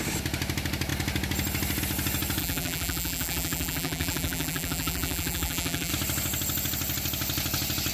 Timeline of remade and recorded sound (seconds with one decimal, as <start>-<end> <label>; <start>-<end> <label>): 0.0-2.4 recorded; 2.4-5.9 remade; 5.9-7.9 recorded

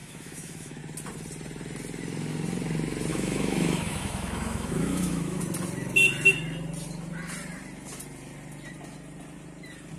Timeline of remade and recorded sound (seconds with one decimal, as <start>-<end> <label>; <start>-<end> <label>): 0.0-0.8 remade; 0.8-3.1 recorded; 3.1-5.4 remade; 5.4-10.0 recorded